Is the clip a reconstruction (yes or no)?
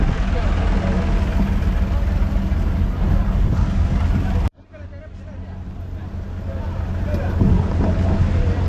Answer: no